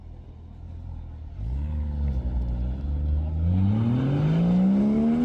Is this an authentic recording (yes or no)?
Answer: yes